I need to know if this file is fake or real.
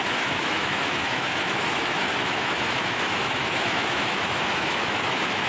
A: fake